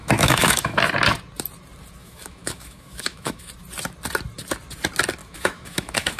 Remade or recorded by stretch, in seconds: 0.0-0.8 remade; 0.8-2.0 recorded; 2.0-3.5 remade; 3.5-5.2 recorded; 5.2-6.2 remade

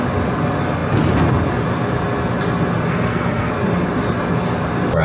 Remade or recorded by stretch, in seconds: 0.0-2.9 recorded; 2.9-3.5 remade; 3.5-5.0 recorded

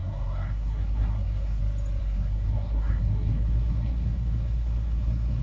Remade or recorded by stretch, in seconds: 0.0-1.6 remade; 1.6-2.0 recorded; 2.0-5.4 remade

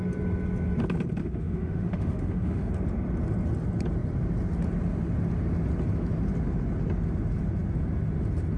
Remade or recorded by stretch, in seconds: 0.0-1.2 recorded; 1.2-2.7 remade; 2.7-8.6 recorded